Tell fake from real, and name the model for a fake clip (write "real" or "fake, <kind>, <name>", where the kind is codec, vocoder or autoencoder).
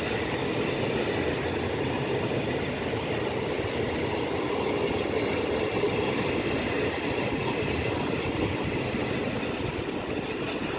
real